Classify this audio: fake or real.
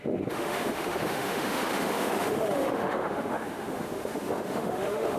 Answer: fake